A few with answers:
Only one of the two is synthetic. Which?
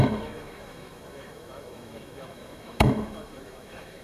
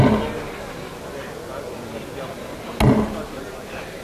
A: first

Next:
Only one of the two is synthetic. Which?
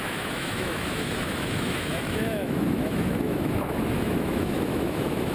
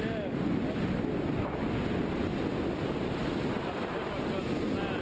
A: first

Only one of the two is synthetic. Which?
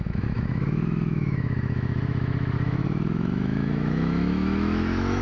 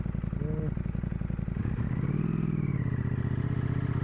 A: first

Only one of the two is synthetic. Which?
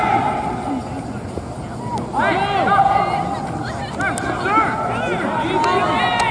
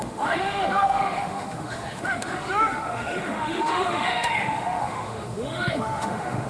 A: second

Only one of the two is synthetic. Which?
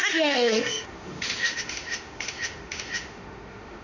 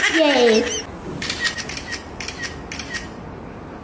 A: first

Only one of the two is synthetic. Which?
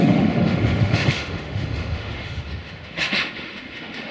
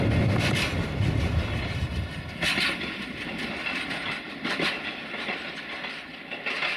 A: first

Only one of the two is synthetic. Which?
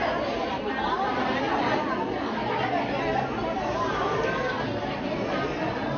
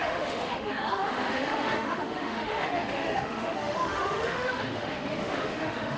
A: second